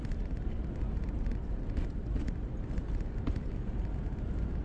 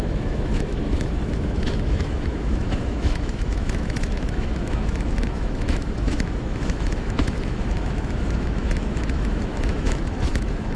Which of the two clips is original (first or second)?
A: first